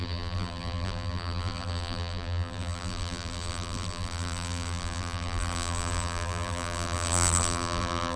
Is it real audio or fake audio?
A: fake